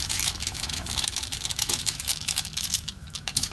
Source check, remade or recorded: remade